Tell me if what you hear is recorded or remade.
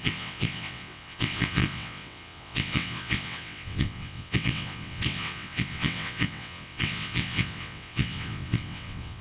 remade